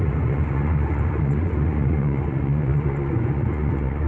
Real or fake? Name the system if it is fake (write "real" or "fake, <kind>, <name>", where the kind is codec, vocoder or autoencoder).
fake, vocoder, Vocos